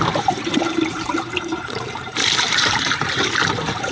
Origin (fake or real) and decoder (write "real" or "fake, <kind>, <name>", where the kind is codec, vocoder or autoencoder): fake, vocoder, BigVGAN v2